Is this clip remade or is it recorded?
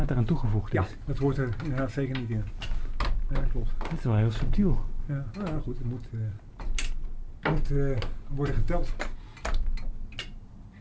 recorded